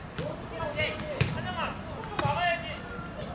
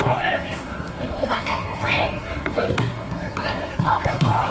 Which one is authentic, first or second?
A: first